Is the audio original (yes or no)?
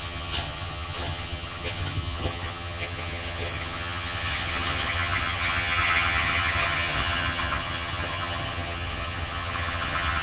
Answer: no